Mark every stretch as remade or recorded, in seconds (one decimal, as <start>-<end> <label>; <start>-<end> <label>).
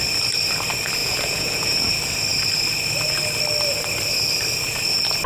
0.0-1.0 recorded; 1.0-1.9 remade; 1.9-5.3 recorded